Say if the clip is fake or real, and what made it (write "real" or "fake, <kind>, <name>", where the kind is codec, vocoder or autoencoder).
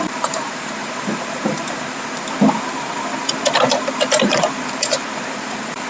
fake, vocoder, BigVGAN v2